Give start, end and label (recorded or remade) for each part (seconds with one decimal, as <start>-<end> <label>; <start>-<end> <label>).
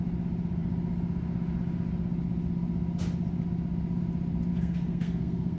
0.0-4.5 recorded; 4.5-5.6 remade